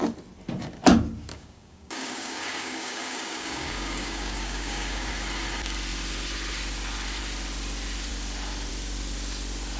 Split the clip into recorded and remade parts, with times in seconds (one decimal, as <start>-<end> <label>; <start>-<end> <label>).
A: 0.0-1.3 recorded; 1.3-5.1 remade; 5.1-9.8 recorded